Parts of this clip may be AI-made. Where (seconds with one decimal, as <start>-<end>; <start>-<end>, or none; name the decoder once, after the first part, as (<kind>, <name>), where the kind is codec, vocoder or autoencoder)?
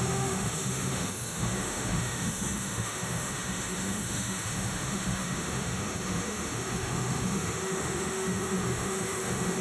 0.0-9.6 (autoencoder, DAC-VAE)